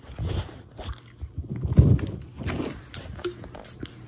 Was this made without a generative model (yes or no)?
yes